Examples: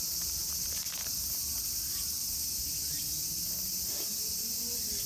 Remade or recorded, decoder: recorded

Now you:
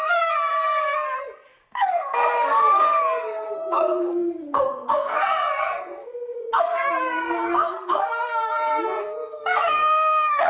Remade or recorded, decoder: remade, codec, SNAC